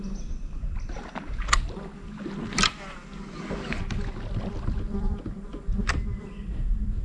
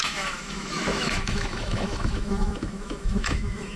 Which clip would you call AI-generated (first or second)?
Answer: second